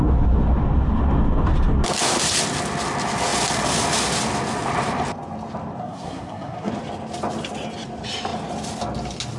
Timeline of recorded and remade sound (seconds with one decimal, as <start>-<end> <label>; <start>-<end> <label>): 0.0-5.8 recorded; 5.8-6.7 remade; 6.7-9.4 recorded